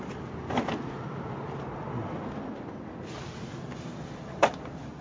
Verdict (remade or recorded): recorded